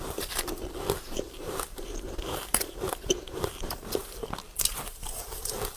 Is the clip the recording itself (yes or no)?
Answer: no